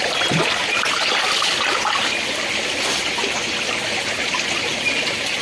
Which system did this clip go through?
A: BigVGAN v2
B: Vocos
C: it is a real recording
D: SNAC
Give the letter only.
C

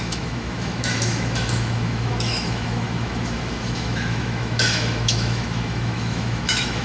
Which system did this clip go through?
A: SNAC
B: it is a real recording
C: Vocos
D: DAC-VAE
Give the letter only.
D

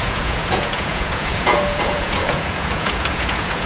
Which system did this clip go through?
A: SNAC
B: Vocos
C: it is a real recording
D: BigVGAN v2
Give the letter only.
B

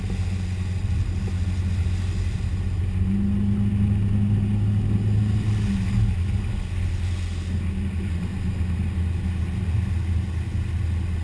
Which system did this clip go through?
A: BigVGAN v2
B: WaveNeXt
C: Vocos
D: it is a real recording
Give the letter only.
D